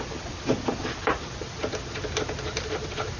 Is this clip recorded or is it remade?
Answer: recorded